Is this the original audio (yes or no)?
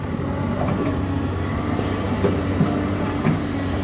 no